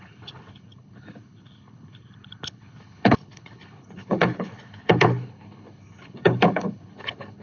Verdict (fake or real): fake